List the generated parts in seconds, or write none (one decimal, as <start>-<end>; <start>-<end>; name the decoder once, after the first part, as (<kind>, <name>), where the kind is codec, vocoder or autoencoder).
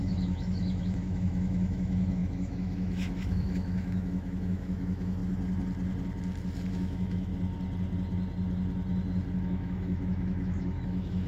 0.0-5.2 (autoencoder, DAC-VAE); 6.7-7.3; 9.4-11.3